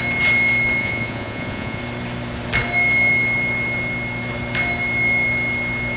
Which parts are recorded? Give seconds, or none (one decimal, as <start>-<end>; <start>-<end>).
0.0-0.8; 1.8-6.0